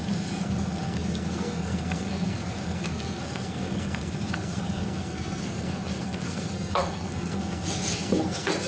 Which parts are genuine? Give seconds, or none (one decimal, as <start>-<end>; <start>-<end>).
none